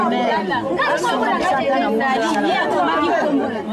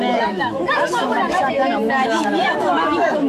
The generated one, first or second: second